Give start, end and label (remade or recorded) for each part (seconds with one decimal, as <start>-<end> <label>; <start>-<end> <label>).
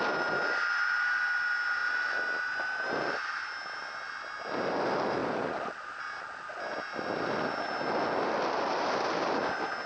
0.0-9.9 recorded